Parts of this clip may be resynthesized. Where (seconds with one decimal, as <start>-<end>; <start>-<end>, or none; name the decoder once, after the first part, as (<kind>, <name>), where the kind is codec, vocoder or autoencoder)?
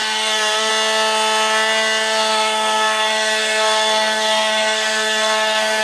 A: 0.0-0.7 (codec, SNAC); 2.3-5.8